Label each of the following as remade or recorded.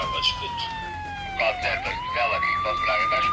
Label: remade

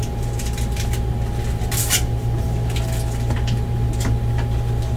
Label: recorded